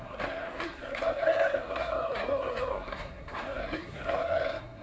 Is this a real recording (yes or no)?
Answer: no